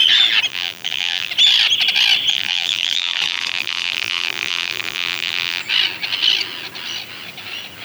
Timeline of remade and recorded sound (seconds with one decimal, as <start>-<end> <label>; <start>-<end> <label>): 0.0-0.5 recorded; 0.5-1.3 remade; 1.3-2.3 recorded; 2.3-5.6 remade; 5.6-7.8 recorded

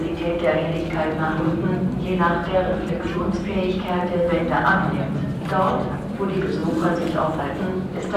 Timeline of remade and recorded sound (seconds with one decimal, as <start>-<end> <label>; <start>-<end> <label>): 0.0-2.4 recorded; 2.4-4.4 remade; 4.4-8.2 recorded

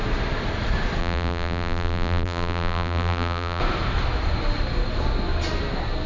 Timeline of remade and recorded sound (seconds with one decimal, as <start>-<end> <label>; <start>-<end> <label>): 0.0-1.0 recorded; 1.0-3.6 remade; 3.6-6.1 recorded

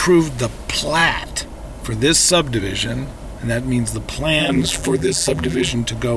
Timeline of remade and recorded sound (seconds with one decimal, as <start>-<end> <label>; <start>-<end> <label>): 0.0-4.4 recorded; 4.4-5.7 remade; 5.7-6.2 recorded